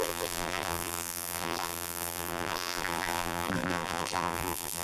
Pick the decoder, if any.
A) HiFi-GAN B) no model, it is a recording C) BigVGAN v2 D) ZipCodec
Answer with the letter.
C